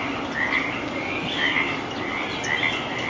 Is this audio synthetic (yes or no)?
no